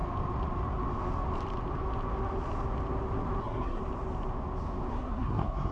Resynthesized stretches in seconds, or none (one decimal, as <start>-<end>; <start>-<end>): 3.4-3.8; 4.9-5.7